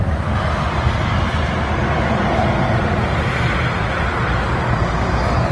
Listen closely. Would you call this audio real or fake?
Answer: real